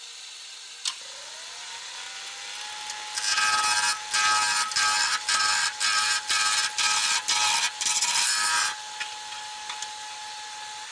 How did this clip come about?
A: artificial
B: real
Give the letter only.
B